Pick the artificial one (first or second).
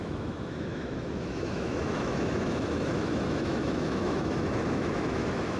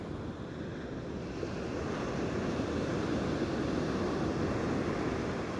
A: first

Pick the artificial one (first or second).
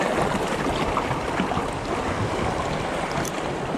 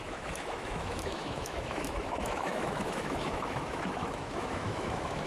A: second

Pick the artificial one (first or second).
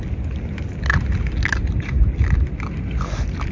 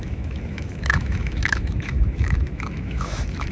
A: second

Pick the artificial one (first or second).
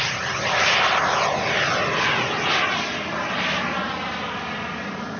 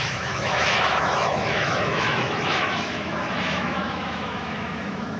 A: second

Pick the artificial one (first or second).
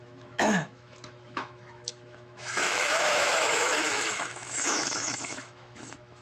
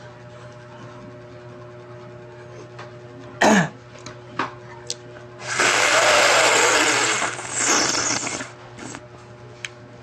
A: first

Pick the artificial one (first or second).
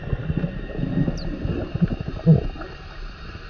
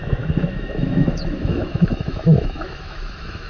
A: second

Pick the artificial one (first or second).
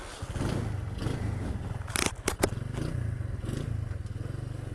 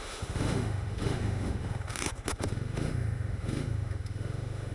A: second